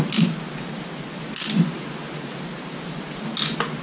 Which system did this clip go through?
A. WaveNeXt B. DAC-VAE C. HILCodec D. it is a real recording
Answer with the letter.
D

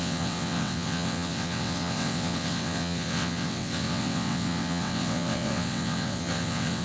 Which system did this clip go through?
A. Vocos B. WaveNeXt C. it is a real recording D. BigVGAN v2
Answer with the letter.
B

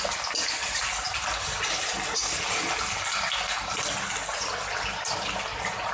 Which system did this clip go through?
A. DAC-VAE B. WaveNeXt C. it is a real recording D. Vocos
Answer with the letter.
C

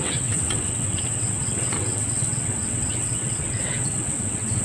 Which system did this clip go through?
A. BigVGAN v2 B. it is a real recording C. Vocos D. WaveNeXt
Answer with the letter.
D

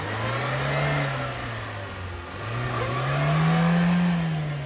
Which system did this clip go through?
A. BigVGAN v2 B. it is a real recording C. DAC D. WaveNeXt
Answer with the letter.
B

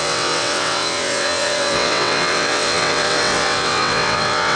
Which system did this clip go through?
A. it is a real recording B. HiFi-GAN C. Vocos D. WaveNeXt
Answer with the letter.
D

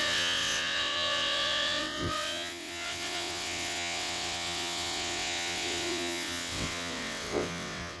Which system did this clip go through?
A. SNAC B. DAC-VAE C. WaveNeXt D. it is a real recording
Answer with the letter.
C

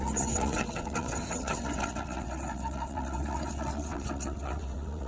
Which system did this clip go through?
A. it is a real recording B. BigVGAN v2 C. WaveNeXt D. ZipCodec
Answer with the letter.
C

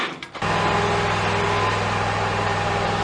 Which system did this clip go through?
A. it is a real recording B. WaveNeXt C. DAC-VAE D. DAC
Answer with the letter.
A